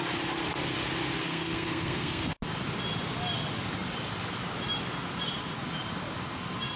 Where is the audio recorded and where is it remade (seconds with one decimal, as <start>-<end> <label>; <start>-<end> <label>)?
0.0-1.2 recorded; 1.2-2.4 remade; 2.4-6.8 recorded